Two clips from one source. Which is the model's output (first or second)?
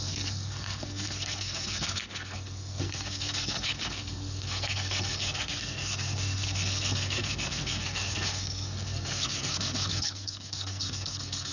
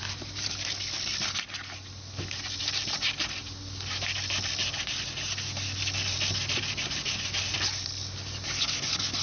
first